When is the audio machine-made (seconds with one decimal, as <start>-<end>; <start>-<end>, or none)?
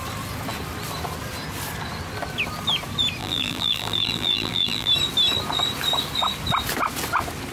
3.2-4.9